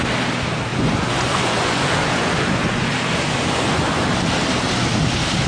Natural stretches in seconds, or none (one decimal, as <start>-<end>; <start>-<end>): 0.0-0.7; 4.0-5.5